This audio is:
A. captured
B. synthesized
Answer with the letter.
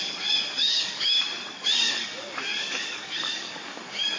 B